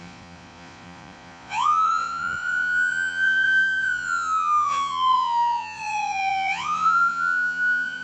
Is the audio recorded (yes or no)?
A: no